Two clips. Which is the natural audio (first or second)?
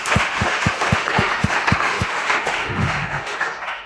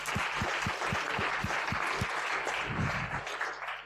second